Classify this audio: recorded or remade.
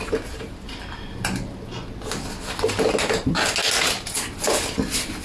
recorded